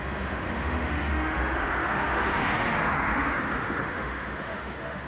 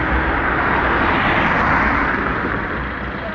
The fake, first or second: first